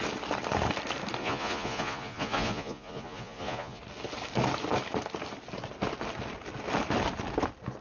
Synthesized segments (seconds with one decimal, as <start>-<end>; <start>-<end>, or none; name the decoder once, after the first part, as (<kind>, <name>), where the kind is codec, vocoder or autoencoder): 1.2-3.8 (vocoder, Vocos)